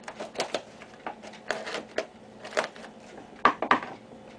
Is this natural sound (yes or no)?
yes